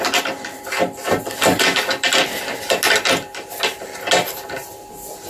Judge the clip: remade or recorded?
recorded